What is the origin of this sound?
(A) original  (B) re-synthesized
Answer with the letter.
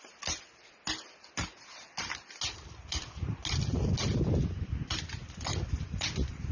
A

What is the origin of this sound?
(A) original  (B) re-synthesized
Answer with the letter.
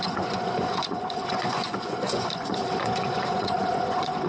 B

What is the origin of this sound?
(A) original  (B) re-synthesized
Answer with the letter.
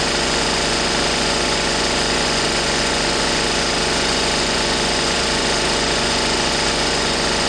B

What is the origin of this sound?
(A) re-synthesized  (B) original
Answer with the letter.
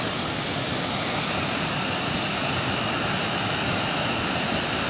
B